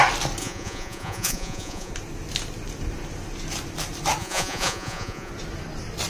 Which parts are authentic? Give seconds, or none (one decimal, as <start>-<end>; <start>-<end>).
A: 0.0-0.4; 1.9-4.2; 5.3-6.1